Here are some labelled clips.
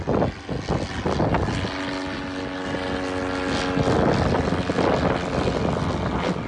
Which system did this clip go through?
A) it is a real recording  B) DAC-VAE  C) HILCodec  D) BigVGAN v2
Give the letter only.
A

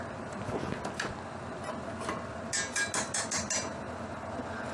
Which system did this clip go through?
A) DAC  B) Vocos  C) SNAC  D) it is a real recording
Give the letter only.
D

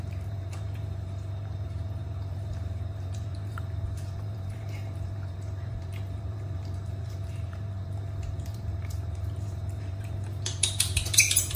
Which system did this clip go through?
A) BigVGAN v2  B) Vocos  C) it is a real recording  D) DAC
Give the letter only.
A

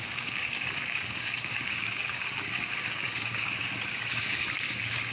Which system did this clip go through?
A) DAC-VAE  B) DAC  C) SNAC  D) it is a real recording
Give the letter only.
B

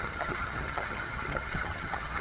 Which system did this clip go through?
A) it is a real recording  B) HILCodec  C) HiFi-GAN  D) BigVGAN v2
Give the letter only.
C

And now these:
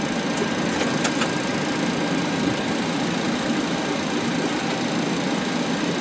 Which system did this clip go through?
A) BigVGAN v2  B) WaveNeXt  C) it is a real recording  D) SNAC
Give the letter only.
C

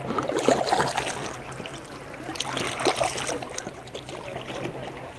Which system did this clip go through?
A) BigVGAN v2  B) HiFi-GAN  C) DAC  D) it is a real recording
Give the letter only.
D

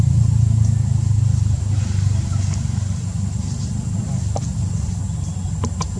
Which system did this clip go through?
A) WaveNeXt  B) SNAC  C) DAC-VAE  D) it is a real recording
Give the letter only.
D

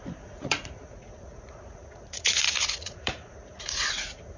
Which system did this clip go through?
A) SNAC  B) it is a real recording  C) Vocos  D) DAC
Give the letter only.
C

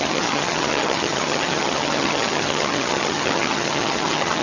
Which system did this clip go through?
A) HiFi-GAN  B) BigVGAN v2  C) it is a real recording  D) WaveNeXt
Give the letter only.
A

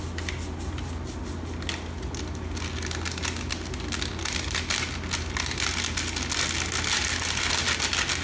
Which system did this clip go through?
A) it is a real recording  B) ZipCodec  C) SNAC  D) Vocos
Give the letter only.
A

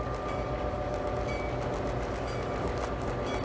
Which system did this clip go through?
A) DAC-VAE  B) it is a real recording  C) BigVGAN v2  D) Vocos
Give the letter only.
B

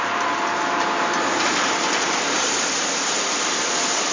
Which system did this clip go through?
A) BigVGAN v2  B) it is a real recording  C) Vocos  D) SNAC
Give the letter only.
A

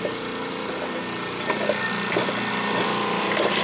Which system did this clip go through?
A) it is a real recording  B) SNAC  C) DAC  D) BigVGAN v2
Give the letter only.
A